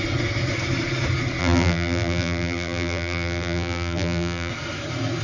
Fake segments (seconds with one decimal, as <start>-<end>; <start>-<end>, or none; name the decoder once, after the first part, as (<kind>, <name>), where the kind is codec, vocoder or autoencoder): 1.4-4.5 (vocoder, BigVGAN v2)